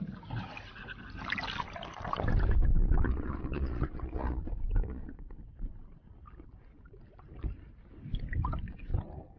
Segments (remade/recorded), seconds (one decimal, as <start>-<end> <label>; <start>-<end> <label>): 0.0-2.7 recorded; 2.7-5.2 remade; 5.2-9.4 recorded